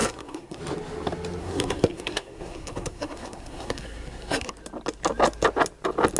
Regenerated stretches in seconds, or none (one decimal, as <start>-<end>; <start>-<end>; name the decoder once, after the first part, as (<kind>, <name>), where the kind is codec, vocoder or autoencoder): 0.0-0.6 (codec, SNAC); 1.4-4.5